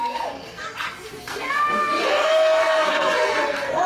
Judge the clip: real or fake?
fake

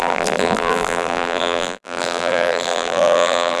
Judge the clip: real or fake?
fake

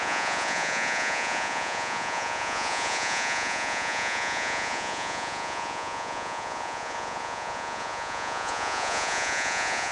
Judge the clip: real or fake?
fake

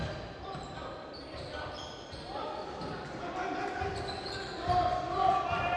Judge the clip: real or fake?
real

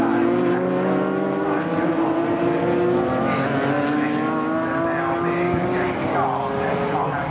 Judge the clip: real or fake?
real